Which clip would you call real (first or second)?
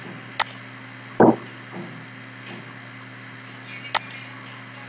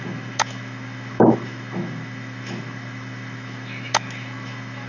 first